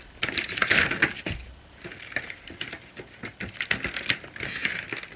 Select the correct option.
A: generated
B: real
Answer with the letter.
B